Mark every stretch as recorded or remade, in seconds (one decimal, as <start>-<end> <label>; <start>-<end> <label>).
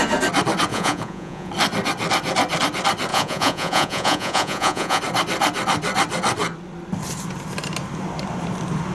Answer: 0.0-0.7 recorded; 0.7-1.5 remade; 1.5-3.1 recorded; 3.1-5.0 remade; 5.0-8.9 recorded